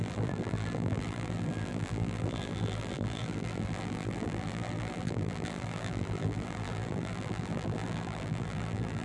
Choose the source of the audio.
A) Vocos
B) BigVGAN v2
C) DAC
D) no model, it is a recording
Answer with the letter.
B